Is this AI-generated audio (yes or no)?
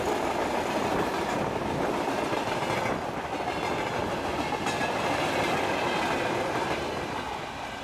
no